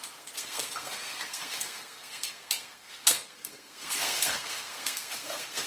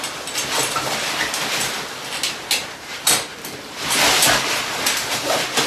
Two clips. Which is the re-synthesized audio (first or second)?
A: first